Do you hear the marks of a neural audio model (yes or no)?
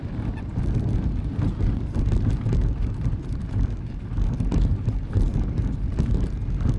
no